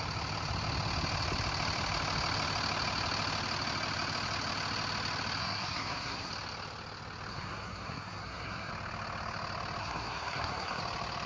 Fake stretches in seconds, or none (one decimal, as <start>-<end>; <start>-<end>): 5.4-6.3; 7.3-8.7; 9.8-10.8